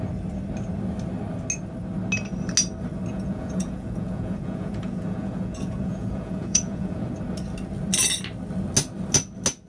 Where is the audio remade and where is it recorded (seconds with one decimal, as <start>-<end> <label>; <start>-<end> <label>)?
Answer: 0.0-3.1 recorded; 3.1-7.1 remade; 7.1-9.7 recorded